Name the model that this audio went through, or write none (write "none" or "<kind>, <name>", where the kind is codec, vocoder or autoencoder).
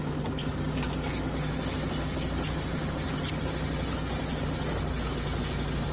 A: none